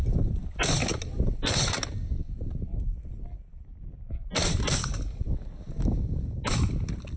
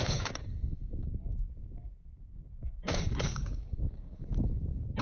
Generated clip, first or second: second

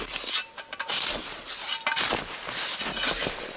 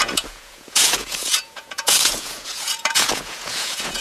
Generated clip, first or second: second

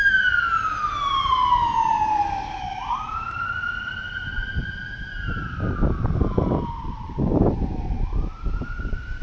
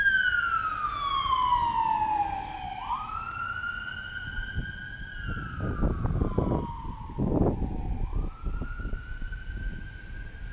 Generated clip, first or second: first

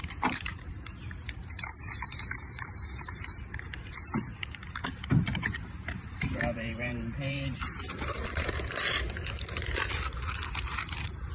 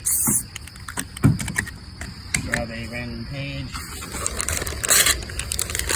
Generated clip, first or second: first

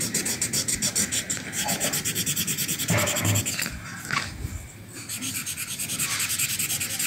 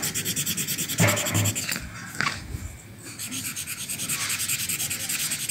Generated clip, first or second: first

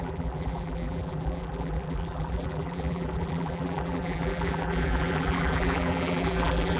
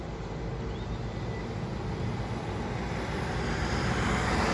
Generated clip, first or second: first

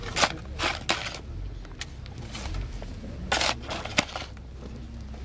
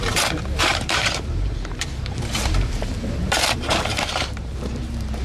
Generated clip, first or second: second